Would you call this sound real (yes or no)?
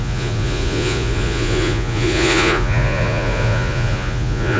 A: no